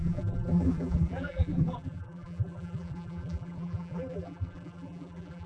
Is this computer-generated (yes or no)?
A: yes